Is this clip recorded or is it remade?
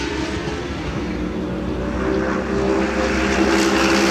recorded